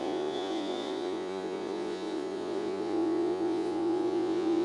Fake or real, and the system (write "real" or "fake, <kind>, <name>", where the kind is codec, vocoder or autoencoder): fake, vocoder, Vocos